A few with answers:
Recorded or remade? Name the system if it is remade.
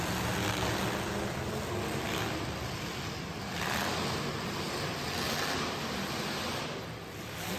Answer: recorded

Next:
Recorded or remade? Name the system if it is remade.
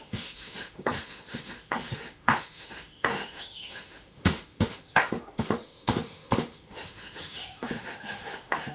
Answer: remade, autoencoder, DAC-VAE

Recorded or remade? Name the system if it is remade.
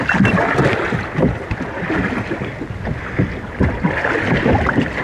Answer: recorded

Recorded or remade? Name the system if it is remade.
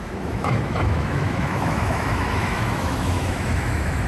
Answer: remade, autoencoder, DAC-VAE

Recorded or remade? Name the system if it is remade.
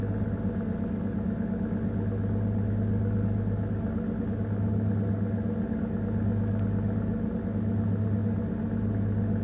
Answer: recorded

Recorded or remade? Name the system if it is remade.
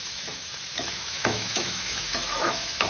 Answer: remade, autoencoder, DAC-VAE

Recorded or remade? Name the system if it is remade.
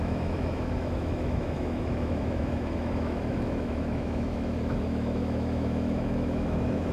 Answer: remade, autoencoder, DAC-VAE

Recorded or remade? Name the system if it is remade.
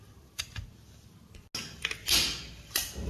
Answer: recorded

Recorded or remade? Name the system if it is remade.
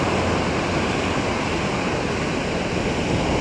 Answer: recorded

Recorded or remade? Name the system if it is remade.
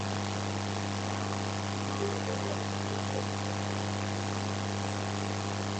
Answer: recorded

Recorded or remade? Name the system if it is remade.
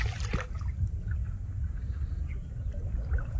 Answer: recorded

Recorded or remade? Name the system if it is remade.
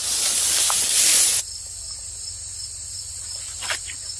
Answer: recorded